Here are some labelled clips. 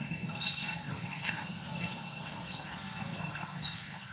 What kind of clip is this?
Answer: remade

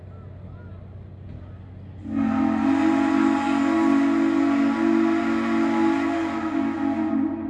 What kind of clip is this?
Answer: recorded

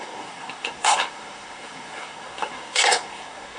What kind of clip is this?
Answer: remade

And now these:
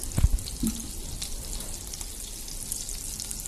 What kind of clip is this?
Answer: recorded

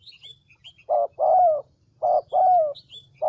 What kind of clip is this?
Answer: recorded